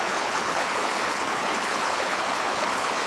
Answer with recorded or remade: remade